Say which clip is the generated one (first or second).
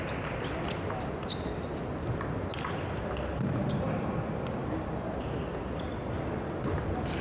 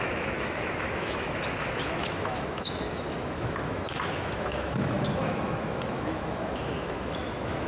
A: second